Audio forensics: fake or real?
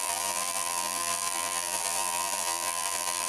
fake